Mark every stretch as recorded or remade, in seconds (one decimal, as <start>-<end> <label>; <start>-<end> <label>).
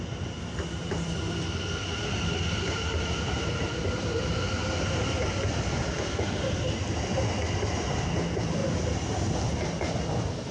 0.0-10.5 recorded